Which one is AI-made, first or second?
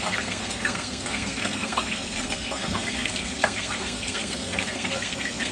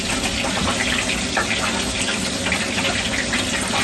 first